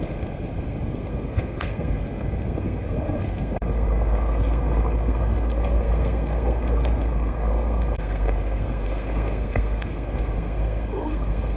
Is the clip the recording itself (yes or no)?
no